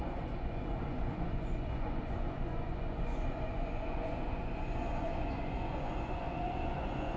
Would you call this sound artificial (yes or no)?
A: yes